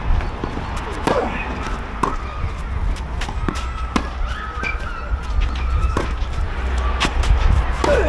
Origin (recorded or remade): recorded